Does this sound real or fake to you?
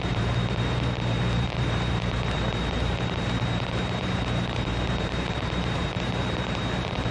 fake